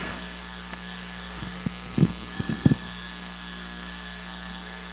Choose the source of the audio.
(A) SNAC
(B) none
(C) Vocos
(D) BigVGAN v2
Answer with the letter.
A